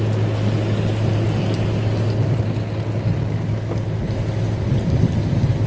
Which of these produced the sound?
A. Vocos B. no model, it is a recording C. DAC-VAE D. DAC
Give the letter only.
B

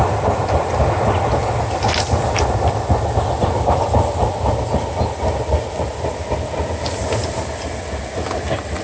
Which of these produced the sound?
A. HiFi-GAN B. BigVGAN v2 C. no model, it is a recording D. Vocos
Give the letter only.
C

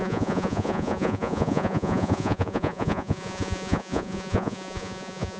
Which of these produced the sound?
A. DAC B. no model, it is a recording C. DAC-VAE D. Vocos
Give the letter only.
D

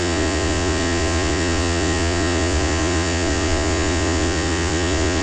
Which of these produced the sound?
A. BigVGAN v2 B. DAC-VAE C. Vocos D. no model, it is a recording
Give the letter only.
C